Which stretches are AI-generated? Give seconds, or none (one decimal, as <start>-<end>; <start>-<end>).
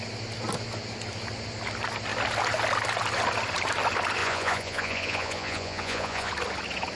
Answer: 4.2-6.3